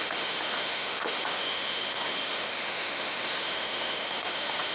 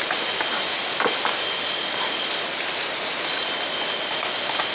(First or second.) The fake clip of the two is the first